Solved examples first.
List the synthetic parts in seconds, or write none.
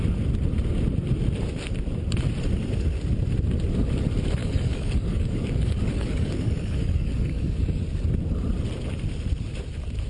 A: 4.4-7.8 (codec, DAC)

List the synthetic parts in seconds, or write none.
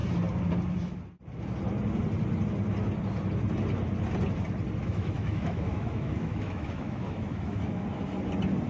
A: 4.8-7.8 (autoencoder, DAC-VAE)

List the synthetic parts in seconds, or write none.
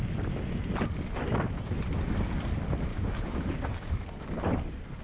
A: 2.9-3.9 (codec, DAC)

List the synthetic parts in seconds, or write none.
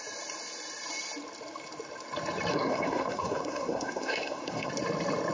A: 2.5-4.7 (codec, SNAC)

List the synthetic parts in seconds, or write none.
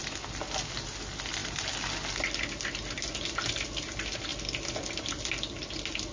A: none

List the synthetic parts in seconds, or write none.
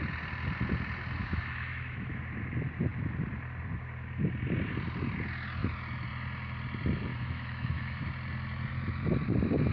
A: 1.2-2.2 (autoencoder, DAC-VAE); 7.1-8.1